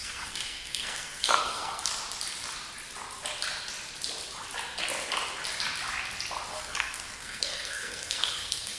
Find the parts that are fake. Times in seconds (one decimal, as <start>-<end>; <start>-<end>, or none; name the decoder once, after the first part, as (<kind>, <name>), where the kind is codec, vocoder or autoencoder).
0.0-1.9 (codec, SNAC); 6.5-8.8

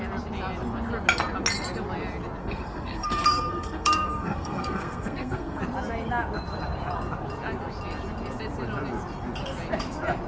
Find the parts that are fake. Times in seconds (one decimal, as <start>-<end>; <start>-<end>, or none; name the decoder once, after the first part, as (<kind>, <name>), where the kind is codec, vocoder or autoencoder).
2.4-5.6 (codec, SNAC)

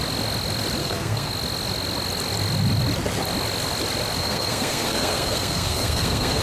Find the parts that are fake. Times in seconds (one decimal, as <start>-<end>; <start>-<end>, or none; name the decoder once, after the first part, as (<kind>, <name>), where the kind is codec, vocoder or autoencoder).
0.8-1.3 (codec, SNAC); 4.2-6.4

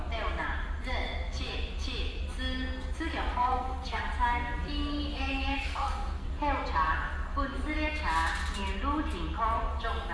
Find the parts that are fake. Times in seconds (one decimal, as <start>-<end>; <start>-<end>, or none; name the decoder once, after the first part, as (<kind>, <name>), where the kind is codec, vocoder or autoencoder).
3.3-4.0 (codec, SNAC); 5.5-6.3